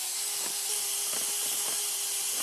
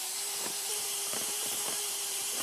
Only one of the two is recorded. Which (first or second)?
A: first